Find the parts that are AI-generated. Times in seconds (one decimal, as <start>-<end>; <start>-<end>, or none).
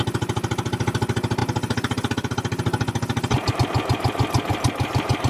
none